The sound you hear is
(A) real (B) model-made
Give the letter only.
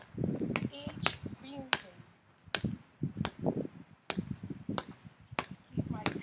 A